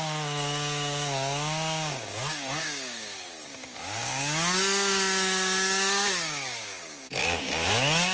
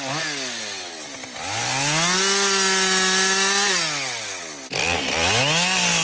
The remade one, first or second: first